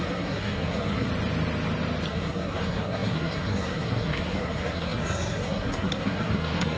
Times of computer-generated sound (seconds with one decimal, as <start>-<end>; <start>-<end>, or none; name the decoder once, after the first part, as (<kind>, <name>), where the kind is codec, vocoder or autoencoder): 0.0-1.1 (codec, SNAC); 2.1-6.8